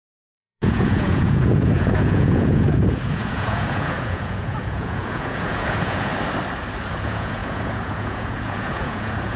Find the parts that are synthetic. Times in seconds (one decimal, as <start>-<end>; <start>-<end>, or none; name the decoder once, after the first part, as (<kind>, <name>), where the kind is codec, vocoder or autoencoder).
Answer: 0.0-6.1 (vocoder, Vocos); 6.8-9.4